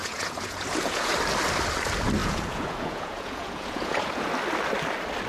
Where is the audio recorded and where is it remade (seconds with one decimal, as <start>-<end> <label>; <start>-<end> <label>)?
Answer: 0.0-1.1 remade; 1.1-2.2 recorded; 2.2-4.3 remade; 4.3-5.3 recorded